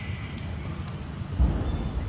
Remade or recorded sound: recorded